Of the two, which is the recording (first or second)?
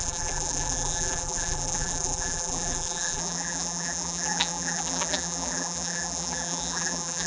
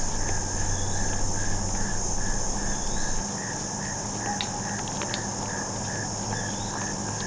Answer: second